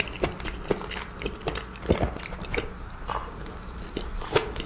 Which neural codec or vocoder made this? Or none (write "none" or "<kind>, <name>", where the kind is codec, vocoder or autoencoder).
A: none